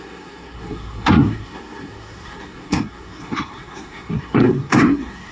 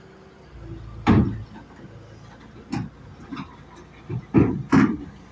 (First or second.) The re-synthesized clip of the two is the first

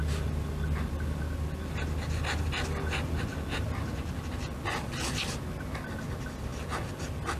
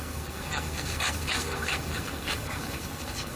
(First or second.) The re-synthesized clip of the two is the second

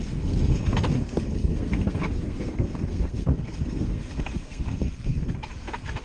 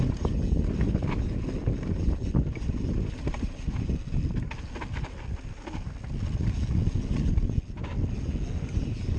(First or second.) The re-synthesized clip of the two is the first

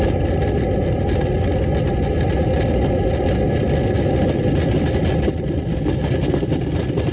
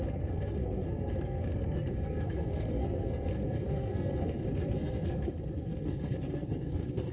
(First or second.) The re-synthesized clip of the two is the second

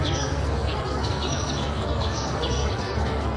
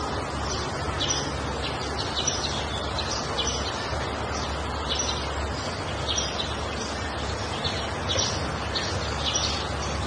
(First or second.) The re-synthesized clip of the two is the first